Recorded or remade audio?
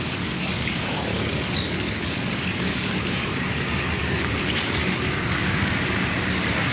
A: remade